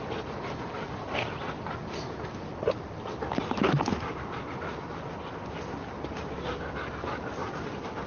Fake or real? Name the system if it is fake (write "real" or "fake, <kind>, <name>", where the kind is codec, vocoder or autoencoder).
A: real